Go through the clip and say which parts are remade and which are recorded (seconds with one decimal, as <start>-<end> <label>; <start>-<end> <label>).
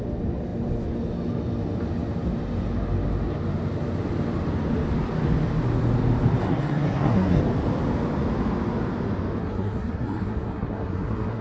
0.0-6.4 recorded; 6.4-7.4 remade; 7.4-9.4 recorded; 9.4-11.4 remade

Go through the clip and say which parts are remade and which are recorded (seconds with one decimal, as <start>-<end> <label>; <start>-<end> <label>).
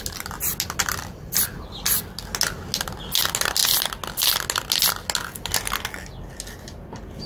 0.0-7.3 recorded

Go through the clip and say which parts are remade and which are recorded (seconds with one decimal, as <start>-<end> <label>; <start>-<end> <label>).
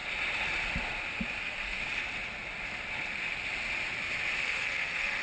0.0-1.4 recorded; 1.4-1.8 remade; 1.8-4.4 recorded; 4.4-5.2 remade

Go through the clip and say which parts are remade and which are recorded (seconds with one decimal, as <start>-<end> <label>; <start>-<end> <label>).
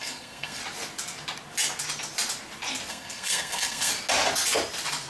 0.0-0.6 remade; 0.6-2.9 recorded; 2.9-3.9 remade; 3.9-5.1 recorded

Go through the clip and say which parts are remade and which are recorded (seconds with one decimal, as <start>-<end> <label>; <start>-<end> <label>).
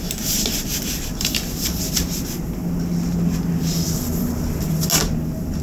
0.0-5.6 recorded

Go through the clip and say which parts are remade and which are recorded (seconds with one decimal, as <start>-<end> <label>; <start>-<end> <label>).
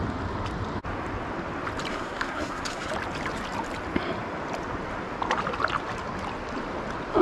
0.0-1.9 recorded; 1.9-2.9 remade; 2.9-7.2 recorded